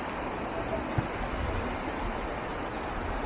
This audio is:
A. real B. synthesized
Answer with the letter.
A